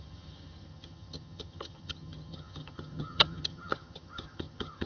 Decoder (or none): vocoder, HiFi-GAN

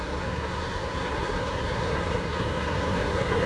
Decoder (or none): codec, SNAC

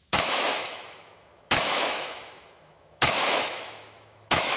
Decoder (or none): autoencoder, DAC-VAE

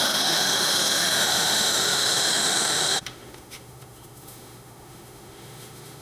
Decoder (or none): autoencoder, DAC-VAE